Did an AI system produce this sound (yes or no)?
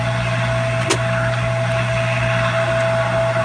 no